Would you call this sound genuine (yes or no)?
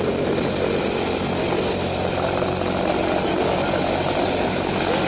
yes